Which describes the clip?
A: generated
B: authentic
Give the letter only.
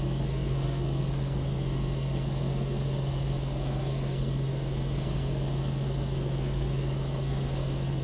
A